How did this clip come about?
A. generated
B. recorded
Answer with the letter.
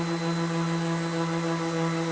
B